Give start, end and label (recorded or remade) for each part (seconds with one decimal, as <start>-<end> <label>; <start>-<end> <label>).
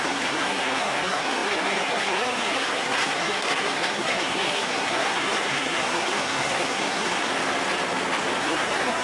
0.0-7.3 remade; 7.3-8.4 recorded; 8.4-9.0 remade